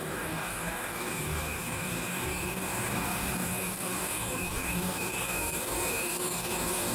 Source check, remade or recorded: remade